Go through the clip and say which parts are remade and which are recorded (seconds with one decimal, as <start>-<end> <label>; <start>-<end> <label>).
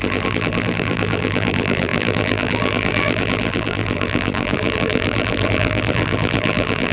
0.0-6.9 remade